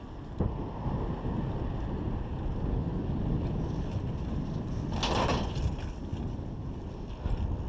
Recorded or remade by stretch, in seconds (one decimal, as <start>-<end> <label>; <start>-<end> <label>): 0.0-7.7 recorded